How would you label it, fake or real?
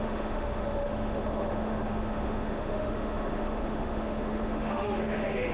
fake